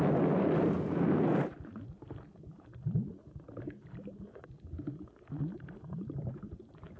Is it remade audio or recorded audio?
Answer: recorded